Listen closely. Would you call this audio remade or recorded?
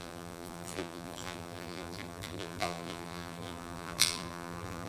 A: remade